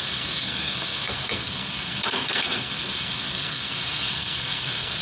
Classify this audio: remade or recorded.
remade